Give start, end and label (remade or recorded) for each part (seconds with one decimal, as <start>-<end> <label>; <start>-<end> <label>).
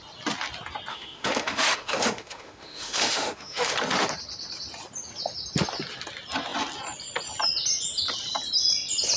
0.0-0.9 recorded; 0.9-3.7 remade; 3.7-9.2 recorded